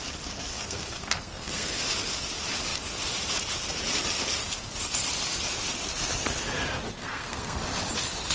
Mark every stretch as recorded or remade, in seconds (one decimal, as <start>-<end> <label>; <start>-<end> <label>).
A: 0.0-0.5 recorded; 0.5-1.8 remade; 1.8-7.0 recorded; 7.0-7.6 remade; 7.6-8.3 recorded